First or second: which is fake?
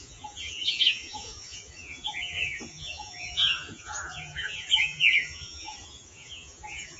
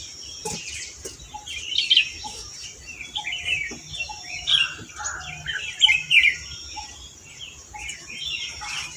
first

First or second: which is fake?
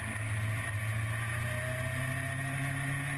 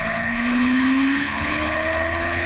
second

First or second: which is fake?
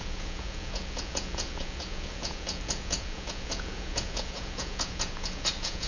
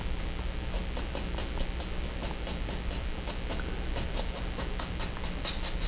first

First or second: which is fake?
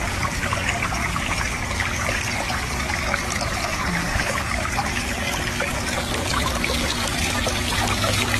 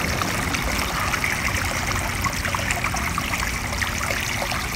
first